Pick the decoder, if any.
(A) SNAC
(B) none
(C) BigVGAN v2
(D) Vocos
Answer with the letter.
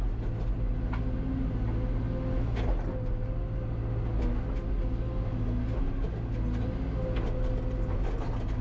B